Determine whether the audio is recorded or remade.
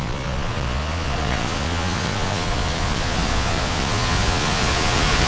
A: remade